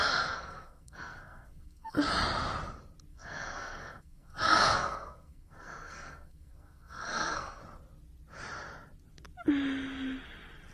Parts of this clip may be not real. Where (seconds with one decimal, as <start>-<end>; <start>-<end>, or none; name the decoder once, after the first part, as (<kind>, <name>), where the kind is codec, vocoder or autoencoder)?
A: 0.0-2.1 (codec, SNAC); 3.1-7.6